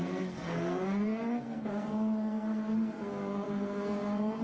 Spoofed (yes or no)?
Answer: yes